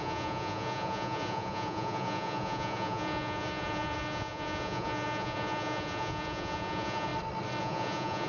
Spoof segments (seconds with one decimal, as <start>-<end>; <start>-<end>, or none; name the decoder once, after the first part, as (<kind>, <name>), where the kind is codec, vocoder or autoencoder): 0.0-7.1 (vocoder, Vocos); 7.6-8.3